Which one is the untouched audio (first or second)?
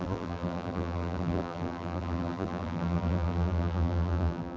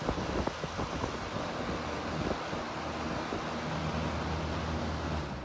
second